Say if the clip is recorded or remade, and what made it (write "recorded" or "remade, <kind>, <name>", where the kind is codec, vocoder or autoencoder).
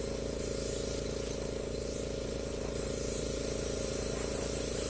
remade, vocoder, BigVGAN v2